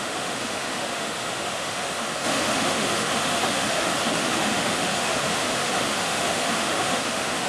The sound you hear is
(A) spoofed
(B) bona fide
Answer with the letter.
A